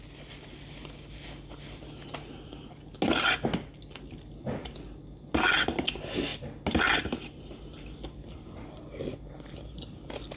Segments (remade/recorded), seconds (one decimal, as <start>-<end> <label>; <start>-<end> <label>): 0.0-10.4 recorded